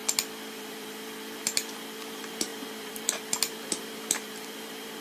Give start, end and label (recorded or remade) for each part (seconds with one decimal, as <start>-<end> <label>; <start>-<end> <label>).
0.0-0.5 recorded; 0.5-5.0 remade